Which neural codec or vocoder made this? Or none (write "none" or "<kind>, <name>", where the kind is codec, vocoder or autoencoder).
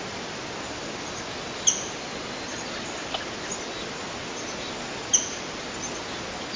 none